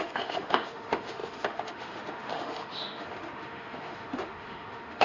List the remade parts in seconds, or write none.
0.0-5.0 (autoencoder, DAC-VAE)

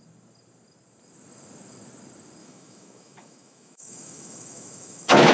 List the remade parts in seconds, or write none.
2.4-5.3 (autoencoder, DAC-VAE)